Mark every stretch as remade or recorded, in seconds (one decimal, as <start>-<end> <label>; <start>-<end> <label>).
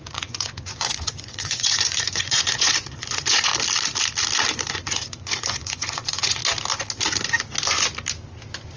0.0-3.5 remade; 3.5-4.7 recorded; 4.7-6.4 remade; 6.4-8.8 recorded